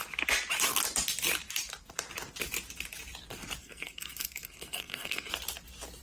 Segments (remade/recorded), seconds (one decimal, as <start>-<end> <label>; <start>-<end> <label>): 0.0-3.6 recorded; 3.6-5.3 remade; 5.3-6.0 recorded